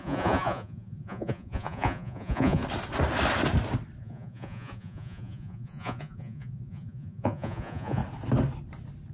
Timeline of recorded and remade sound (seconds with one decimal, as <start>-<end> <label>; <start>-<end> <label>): 0.0-2.6 remade; 2.6-4.0 recorded; 4.0-8.0 remade; 8.0-9.1 recorded